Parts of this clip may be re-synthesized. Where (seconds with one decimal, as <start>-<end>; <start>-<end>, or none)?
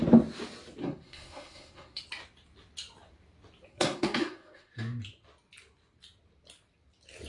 0.8-2.0; 3.7-4.7